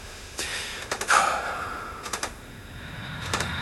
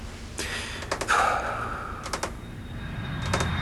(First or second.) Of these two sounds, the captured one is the second